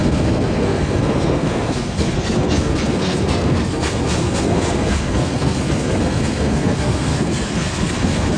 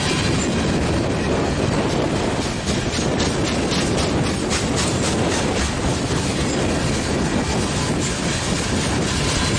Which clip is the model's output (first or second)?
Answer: first